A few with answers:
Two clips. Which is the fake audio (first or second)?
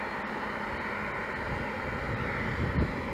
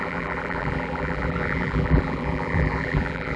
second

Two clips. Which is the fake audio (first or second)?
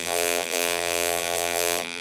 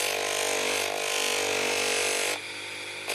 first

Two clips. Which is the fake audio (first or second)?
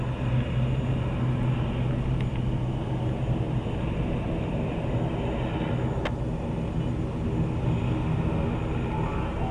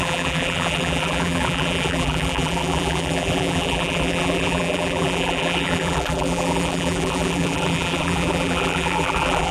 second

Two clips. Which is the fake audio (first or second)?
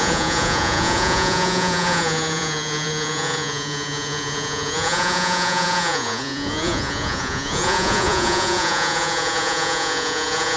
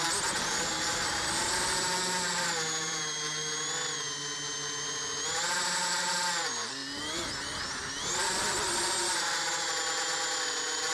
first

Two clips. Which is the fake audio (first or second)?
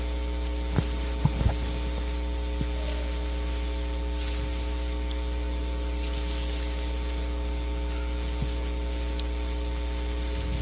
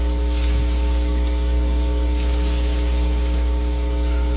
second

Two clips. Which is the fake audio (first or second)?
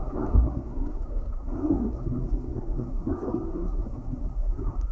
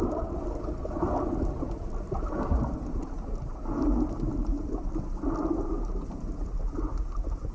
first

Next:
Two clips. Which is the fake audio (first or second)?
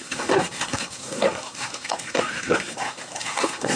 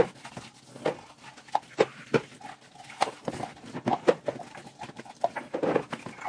first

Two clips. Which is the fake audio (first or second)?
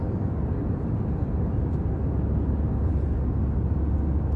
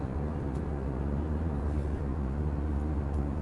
second